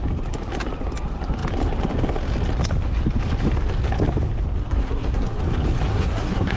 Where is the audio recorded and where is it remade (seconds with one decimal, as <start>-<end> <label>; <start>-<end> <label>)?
0.0-4.6 recorded; 4.6-5.4 remade; 5.4-5.9 recorded; 5.9-6.6 remade